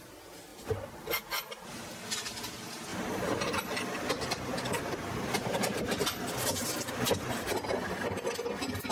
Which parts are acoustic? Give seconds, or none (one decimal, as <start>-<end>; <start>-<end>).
0.0-0.5; 1.5-2.9; 7.1-8.9